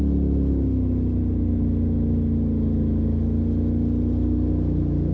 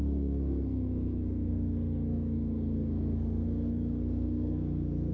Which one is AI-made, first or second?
second